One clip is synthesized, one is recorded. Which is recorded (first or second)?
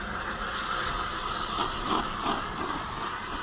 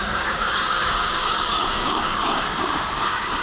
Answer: first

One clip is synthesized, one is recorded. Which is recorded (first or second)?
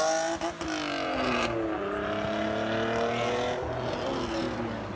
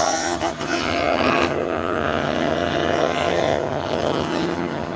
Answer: first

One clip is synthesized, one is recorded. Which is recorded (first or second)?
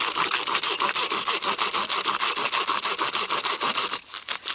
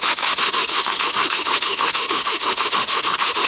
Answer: first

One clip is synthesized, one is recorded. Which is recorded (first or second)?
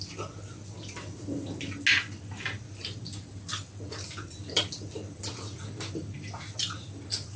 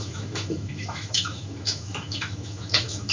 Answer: first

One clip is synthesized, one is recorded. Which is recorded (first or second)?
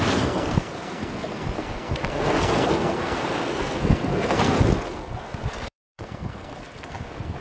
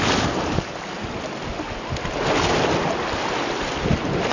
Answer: second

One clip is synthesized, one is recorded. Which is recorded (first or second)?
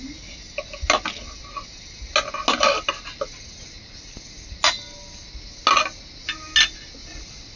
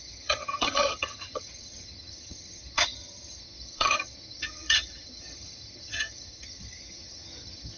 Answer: first